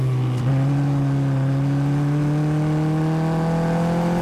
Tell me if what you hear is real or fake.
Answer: real